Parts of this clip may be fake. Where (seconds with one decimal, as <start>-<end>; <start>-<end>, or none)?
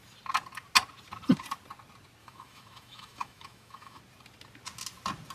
2.2-4.0